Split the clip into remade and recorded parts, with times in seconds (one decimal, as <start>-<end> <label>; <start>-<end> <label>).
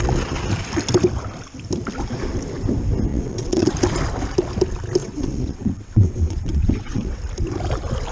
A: 0.0-3.1 recorded; 3.1-3.7 remade; 3.7-5.0 recorded; 5.0-7.2 remade; 7.2-8.1 recorded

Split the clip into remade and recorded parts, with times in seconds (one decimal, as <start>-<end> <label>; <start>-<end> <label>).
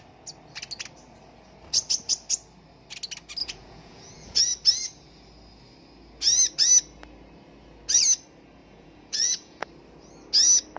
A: 0.0-3.4 recorded; 3.4-4.4 remade; 4.4-8.6 recorded; 8.6-9.7 remade; 9.7-10.8 recorded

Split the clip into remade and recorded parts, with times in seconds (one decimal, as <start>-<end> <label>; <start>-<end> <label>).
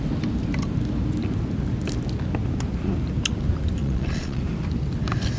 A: 0.0-3.8 recorded; 3.8-4.4 remade; 4.4-5.4 recorded